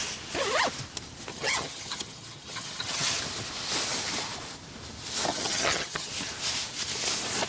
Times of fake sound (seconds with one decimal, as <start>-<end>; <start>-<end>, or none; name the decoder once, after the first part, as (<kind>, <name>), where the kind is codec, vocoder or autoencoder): 1.3-3.2 (vocoder, HiFi-GAN); 5.3-6.1